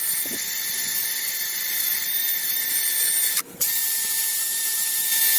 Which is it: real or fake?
real